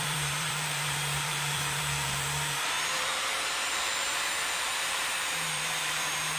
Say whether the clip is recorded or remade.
remade